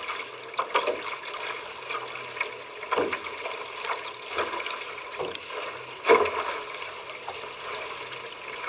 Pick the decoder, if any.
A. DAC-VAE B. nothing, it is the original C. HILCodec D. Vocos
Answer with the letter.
B